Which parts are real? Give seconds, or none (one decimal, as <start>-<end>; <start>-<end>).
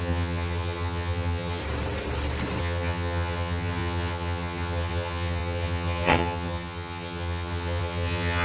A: 1.6-2.6